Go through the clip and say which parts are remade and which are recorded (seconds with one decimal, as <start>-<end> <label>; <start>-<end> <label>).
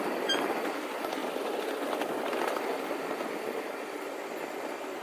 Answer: 0.0-5.0 recorded